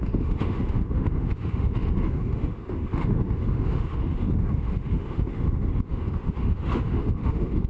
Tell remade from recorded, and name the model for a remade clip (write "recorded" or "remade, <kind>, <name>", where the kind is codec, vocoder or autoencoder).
remade, autoencoder, DAC-VAE